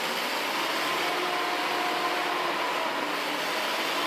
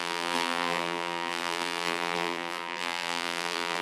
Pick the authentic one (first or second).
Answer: first